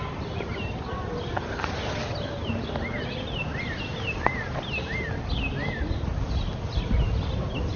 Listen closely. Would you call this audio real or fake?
fake